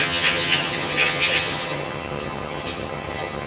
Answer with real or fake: fake